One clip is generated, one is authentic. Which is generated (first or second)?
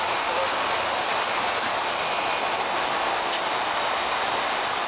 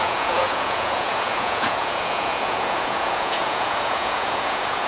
second